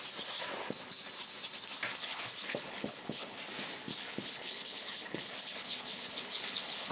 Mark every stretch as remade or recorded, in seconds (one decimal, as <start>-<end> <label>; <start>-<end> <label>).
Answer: 0.0-2.0 recorded; 2.0-3.4 remade; 3.4-3.9 recorded; 3.9-6.9 remade